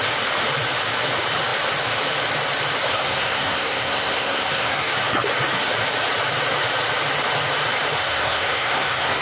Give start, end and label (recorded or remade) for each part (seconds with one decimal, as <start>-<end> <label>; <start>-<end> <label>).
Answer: 0.0-2.9 recorded; 2.9-4.9 remade; 4.9-8.0 recorded; 8.0-9.2 remade